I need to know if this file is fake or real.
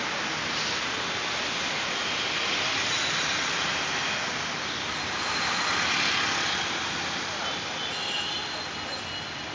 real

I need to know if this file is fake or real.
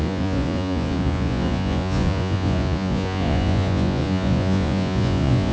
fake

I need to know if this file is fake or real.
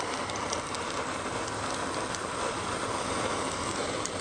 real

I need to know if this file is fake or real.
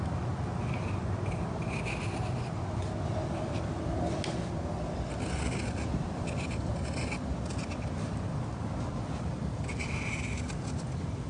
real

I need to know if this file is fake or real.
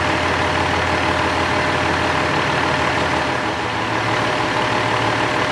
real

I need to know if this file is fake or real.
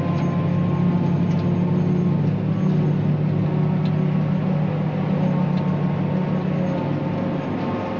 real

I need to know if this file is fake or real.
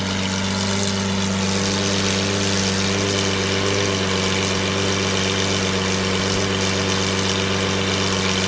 real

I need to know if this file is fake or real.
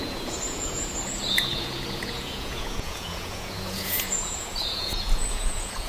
fake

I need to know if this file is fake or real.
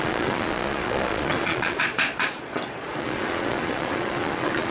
fake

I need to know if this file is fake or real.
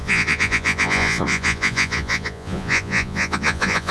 fake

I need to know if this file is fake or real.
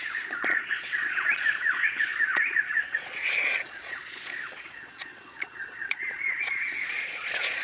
fake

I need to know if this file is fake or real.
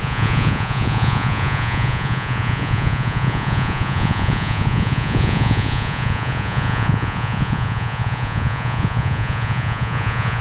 fake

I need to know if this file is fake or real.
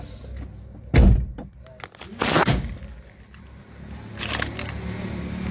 real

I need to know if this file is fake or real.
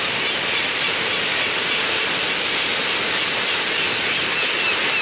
real